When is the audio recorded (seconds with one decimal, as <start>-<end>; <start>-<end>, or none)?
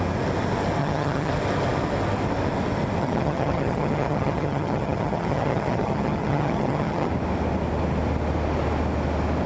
0.0-0.8; 1.3-3.0; 7.1-9.5